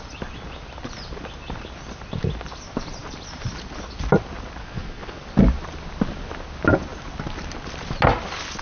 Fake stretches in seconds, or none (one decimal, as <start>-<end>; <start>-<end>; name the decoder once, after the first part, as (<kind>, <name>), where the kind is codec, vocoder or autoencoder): 4.6-5.2 (vocoder, Vocos)

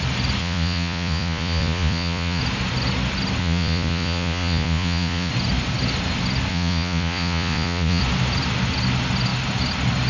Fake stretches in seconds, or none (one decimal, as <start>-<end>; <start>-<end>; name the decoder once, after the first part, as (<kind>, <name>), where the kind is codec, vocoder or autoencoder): 0.4-2.4 (vocoder, Vocos); 3.4-5.3; 6.5-8.0

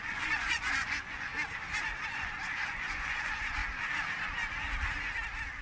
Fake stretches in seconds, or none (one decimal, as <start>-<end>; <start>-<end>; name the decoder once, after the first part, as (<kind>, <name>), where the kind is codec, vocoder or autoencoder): 0.0-1.3 (vocoder, Vocos); 2.1-3.6

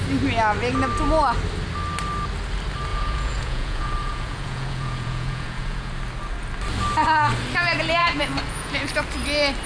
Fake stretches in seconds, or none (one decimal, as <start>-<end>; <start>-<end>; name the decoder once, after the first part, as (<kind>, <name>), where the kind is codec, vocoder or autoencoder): 2.9-5.9 (vocoder, Vocos); 8.0-8.9

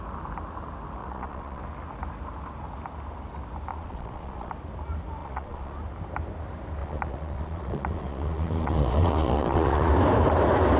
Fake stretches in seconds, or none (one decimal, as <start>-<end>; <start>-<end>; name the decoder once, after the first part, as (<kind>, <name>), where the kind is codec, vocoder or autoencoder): 1.0-1.6 (vocoder, Vocos); 3.7-4.5; 5.2-5.8; 6.8-9.9

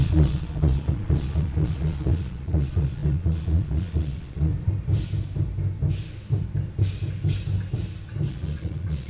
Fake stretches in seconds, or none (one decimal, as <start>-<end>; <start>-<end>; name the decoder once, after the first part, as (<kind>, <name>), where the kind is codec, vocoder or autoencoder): 0.0-4.5 (vocoder, Vocos); 8.3-9.1